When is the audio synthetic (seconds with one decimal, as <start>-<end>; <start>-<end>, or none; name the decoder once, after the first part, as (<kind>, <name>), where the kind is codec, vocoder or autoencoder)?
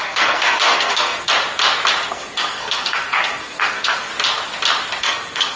0.0-1.3 (codec, SNAC); 2.1-4.1; 5.0-5.6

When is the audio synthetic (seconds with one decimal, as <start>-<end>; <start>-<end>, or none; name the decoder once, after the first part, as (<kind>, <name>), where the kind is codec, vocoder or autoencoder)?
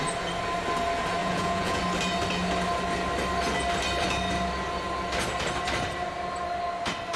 1.2-1.8 (vocoder, Vocos)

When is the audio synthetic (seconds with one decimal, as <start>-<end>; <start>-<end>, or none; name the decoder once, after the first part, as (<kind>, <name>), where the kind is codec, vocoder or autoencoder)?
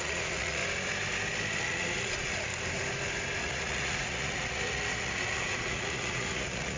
0.0-0.6 (vocoder, Vocos); 1.6-2.5; 3.4-6.8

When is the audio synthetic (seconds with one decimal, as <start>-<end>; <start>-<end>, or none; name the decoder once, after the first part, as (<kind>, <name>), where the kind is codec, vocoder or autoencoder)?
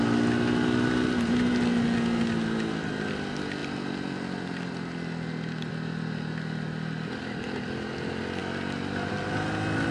none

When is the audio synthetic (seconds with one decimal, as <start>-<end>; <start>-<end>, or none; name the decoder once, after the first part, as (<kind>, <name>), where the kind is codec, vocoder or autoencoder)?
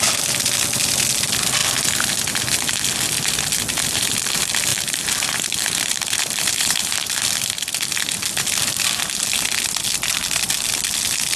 4.7-7.3 (vocoder, BigVGAN v2)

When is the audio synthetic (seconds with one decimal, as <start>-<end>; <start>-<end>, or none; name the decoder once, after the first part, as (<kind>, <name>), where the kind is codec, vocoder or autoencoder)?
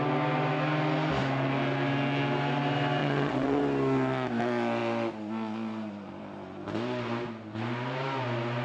3.0-3.6 (vocoder, Vocos)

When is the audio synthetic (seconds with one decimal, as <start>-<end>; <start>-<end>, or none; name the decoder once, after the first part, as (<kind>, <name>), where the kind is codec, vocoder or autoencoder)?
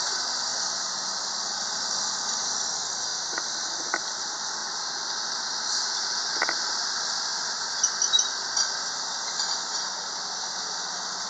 3.1-4.1 (vocoder, BigVGAN v2)